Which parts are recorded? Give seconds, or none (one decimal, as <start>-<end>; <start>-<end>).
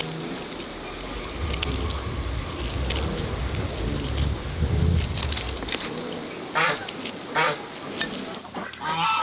0.0-9.2